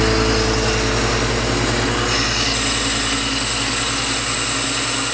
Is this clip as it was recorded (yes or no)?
yes